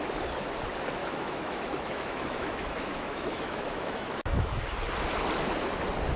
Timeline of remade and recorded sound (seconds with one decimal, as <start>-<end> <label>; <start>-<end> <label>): 0.0-1.0 recorded; 1.0-4.6 remade; 4.6-6.2 recorded

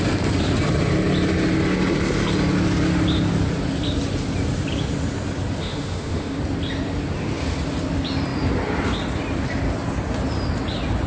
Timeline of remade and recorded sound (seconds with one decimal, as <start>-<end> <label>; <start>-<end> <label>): 0.0-5.6 recorded; 5.6-6.4 remade; 6.4-11.1 recorded

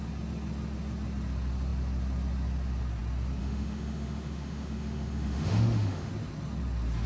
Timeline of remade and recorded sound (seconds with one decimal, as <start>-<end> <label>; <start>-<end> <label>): 0.0-3.4 recorded; 3.4-6.1 remade; 6.1-7.1 recorded

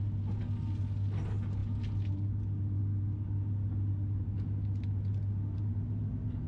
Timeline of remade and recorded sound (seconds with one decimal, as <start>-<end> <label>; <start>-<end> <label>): 0.0-6.5 recorded

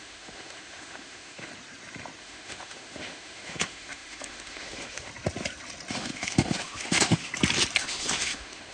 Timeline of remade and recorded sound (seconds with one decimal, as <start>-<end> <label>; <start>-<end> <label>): 0.0-1.5 remade; 1.5-2.2 recorded; 2.2-5.1 remade; 5.1-5.9 recorded; 5.9-7.3 remade; 7.3-7.8 recorded; 7.8-8.7 remade

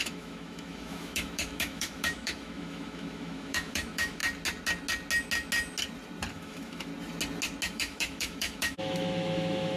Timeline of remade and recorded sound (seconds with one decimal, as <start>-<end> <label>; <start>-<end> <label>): 0.0-4.2 remade; 4.2-6.3 recorded; 6.3-6.9 remade; 6.9-7.7 recorded; 7.7-9.8 remade

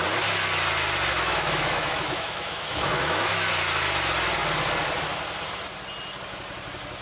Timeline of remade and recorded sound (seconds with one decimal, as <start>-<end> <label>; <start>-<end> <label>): 0.0-1.1 recorded; 1.1-3.5 remade; 3.5-7.0 recorded

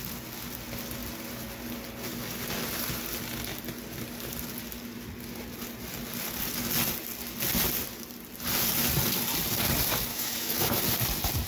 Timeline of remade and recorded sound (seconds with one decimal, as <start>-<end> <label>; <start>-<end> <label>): 0.0-10.1 recorded; 10.1-10.8 remade; 10.8-11.5 recorded